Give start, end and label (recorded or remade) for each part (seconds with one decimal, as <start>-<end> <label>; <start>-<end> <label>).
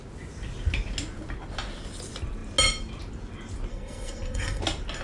0.0-3.7 recorded; 3.7-4.6 remade; 4.6-5.0 recorded